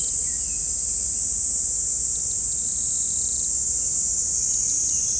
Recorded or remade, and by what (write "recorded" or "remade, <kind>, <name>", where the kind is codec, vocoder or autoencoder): recorded